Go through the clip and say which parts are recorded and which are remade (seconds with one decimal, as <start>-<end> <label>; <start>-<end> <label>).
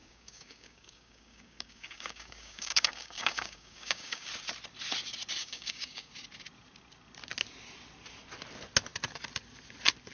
0.0-4.3 remade; 4.3-5.4 recorded; 5.4-6.1 remade; 6.1-10.1 recorded